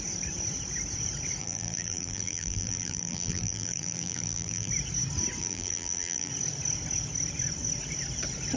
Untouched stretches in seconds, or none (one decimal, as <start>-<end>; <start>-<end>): 0.0-1.4; 4.7-5.4; 6.3-8.6